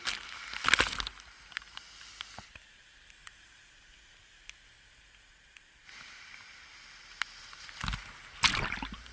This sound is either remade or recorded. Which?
recorded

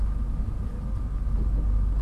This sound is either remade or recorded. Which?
recorded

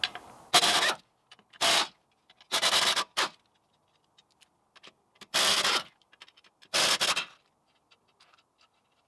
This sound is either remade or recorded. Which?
recorded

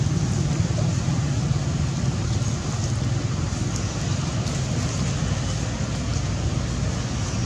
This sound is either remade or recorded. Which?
recorded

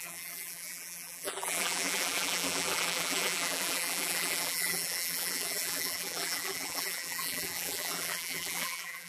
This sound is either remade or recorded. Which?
remade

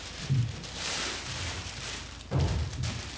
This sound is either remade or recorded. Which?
recorded